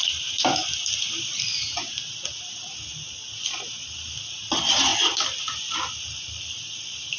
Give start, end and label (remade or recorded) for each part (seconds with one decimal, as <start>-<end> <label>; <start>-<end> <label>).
0.0-7.2 recorded